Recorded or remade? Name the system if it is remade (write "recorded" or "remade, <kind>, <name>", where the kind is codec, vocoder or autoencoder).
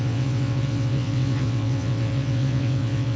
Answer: remade, vocoder, WaveNeXt